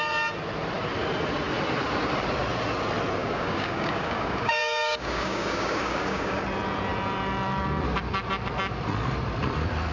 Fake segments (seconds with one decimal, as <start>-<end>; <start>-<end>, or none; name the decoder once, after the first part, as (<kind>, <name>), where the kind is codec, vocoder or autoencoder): 3.2-6.4 (codec, DAC)

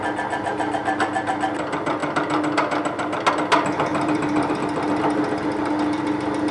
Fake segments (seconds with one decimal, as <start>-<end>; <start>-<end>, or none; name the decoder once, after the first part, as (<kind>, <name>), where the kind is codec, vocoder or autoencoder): 3.9-4.5 (vocoder, BigVGAN v2)

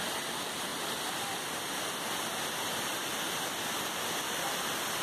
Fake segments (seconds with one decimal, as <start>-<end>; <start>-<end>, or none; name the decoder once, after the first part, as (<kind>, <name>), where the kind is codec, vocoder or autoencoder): none

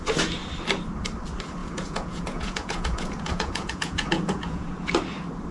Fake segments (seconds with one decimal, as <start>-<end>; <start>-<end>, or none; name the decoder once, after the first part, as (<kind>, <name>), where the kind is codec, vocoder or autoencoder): 1.6-4.9 (vocoder, Vocos)

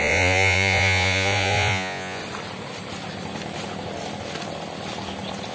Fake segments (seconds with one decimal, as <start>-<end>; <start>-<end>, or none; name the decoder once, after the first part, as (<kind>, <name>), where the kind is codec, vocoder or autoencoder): 0.0-2.2 (vocoder, Vocos)

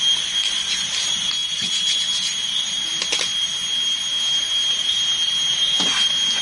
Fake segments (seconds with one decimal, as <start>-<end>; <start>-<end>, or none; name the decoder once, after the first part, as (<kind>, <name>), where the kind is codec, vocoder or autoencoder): none

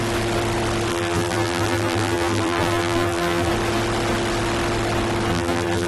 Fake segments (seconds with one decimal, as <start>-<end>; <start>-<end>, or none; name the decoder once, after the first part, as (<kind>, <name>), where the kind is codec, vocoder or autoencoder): 0.9-3.5 (vocoder, BigVGAN v2); 5.3-5.9